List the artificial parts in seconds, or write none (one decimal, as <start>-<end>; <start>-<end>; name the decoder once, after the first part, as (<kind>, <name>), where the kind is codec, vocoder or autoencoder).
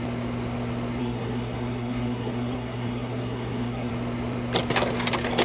1.0-3.9 (codec, SNAC)